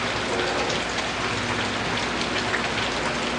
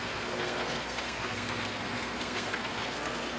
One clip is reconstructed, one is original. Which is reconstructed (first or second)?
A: second